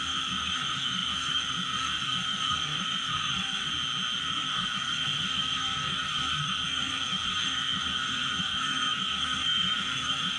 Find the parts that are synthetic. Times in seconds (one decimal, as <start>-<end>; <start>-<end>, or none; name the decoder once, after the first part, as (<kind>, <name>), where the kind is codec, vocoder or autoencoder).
0.0-3.7 (codec, SNAC); 4.2-10.4